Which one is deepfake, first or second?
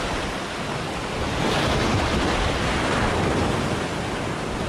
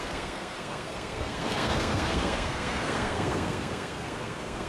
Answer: second